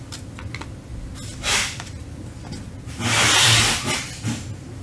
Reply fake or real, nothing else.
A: real